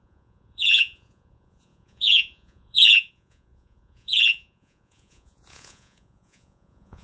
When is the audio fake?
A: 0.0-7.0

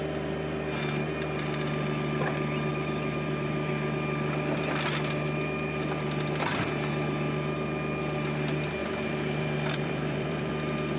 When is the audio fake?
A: 2.7-3.7; 8.8-10.5

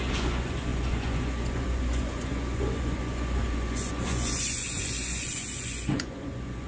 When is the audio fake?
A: 0.0-6.7

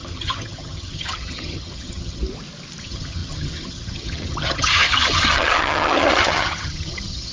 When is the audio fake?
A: 0.0-2.2; 2.8-7.3

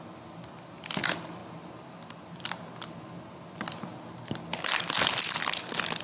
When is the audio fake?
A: none

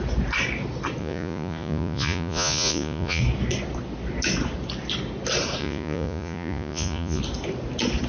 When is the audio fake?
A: 1.0-3.2; 5.6-7.2